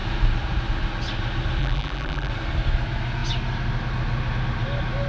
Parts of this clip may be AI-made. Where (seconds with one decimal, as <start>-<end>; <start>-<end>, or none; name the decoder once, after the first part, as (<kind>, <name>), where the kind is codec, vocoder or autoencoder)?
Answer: 1.6-2.3 (vocoder, BigVGAN v2)